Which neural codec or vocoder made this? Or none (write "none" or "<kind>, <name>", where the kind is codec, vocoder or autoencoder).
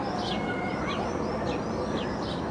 none